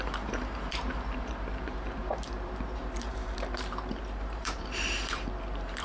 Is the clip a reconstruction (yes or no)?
yes